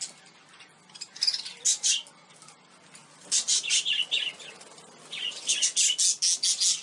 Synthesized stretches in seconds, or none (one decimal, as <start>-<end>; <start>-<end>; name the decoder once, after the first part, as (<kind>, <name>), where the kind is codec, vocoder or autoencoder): none